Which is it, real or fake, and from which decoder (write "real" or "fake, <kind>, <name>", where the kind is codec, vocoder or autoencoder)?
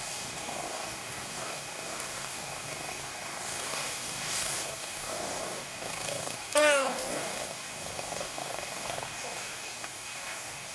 fake, codec, DAC